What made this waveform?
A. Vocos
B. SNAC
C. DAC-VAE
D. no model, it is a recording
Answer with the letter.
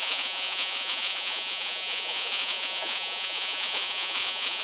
A